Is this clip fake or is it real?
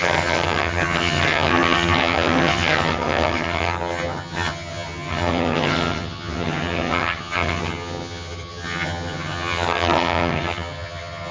fake